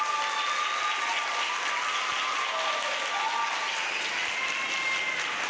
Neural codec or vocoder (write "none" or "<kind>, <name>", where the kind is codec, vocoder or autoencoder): none